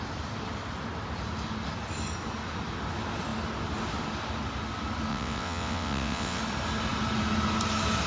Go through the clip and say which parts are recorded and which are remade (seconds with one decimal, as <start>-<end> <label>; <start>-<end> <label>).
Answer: 0.0-5.1 recorded; 5.1-6.4 remade; 6.4-8.1 recorded